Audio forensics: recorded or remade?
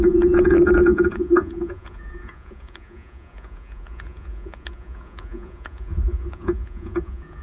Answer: remade